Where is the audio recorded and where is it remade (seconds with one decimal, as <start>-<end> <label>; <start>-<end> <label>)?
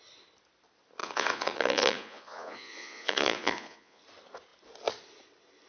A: 0.0-1.0 recorded; 1.0-4.0 remade; 4.0-5.7 recorded